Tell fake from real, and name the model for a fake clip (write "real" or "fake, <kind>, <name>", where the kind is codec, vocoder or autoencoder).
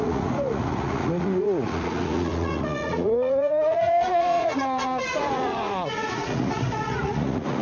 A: fake, vocoder, Vocos